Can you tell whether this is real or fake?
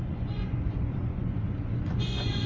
fake